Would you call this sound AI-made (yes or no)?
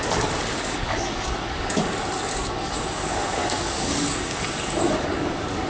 yes